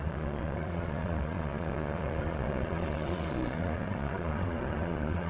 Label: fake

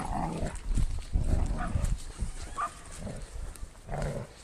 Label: real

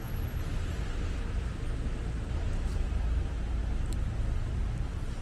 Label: real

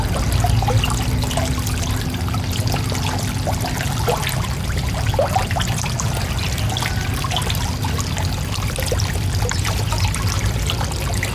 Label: real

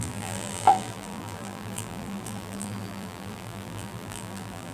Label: fake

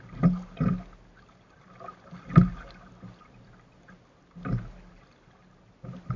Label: real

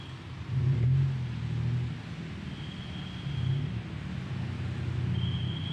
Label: real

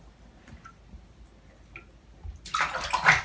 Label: real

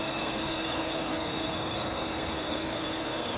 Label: fake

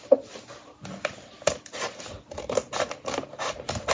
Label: real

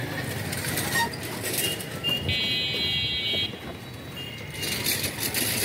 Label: real